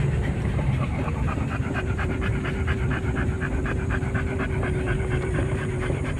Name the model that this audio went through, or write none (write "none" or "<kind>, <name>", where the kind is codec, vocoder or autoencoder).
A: vocoder, BigVGAN v2